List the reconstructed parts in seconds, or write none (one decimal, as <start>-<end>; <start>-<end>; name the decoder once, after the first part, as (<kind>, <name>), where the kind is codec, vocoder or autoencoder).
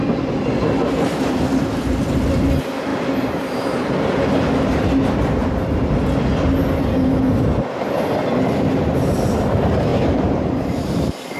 2.9-4.2 (vocoder, BigVGAN v2); 9.9-11.0